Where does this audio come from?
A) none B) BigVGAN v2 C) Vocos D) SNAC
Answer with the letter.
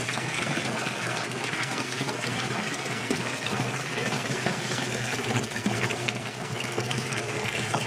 D